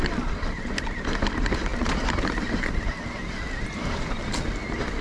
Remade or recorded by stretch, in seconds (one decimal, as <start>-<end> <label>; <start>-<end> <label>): 0.0-5.0 recorded